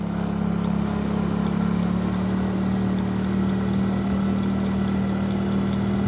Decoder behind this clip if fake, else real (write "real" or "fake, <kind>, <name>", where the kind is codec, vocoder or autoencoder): real